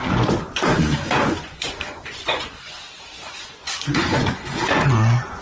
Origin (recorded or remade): remade